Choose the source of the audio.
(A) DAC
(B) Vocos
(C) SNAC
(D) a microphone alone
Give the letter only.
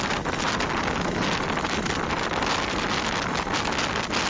D